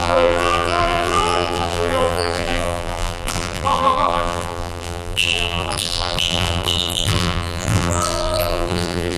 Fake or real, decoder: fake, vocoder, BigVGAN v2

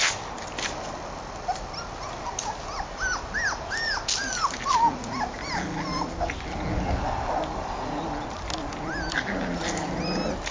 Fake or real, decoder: real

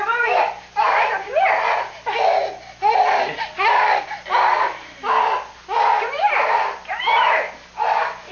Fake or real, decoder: real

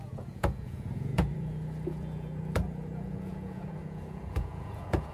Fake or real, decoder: fake, vocoder, Vocos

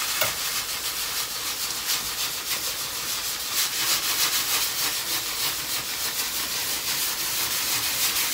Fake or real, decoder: real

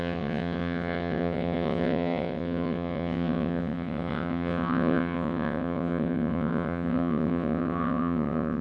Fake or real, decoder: fake, vocoder, WaveNeXt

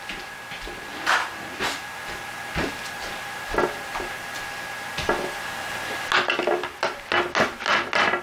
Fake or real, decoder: real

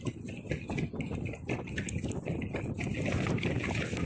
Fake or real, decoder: real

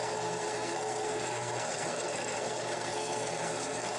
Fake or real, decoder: fake, codec, SNAC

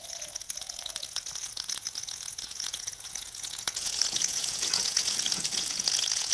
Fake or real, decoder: fake, vocoder, Vocos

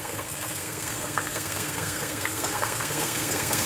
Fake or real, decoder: fake, codec, SNAC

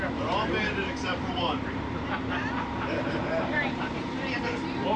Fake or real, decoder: fake, vocoder, BigVGAN v2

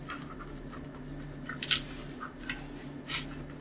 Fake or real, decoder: real